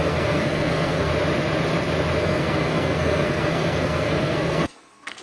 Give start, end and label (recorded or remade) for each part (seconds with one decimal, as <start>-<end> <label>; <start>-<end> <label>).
0.0-1.1 remade; 1.1-2.2 recorded; 2.2-5.2 remade